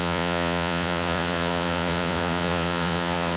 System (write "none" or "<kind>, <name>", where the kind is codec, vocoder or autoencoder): vocoder, Vocos